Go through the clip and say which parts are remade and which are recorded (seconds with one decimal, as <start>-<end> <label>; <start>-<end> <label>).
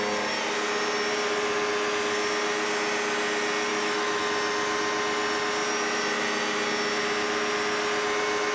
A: 0.0-3.7 recorded; 3.7-4.2 remade; 4.2-8.5 recorded